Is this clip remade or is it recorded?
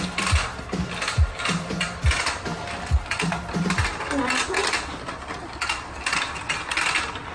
recorded